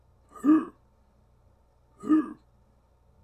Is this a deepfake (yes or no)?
no